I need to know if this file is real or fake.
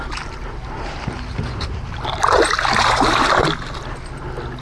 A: real